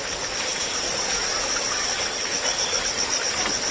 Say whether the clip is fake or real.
real